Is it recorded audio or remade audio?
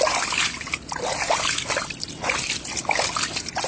recorded